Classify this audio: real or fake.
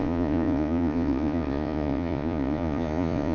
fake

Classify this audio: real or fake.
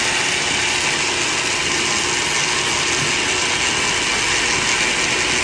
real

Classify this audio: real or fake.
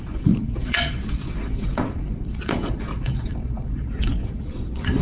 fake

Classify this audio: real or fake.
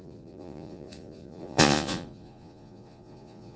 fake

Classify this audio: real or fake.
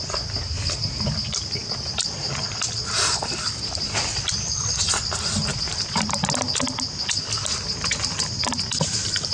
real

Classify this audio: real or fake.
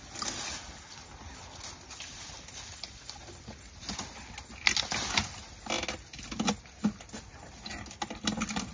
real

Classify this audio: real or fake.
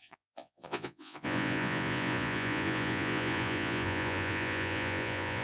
fake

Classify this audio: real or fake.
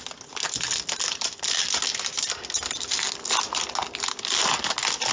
real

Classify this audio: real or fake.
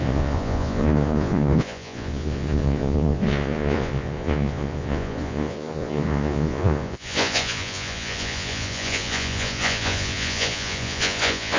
fake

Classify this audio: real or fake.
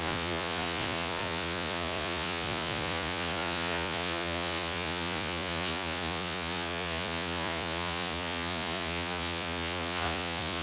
fake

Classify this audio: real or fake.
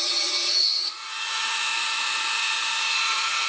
fake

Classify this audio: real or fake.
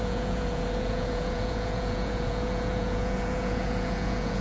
fake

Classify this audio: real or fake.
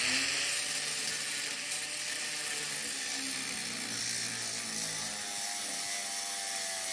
real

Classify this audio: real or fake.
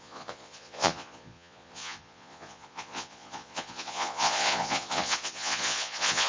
fake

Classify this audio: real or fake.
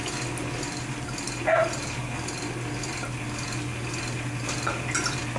real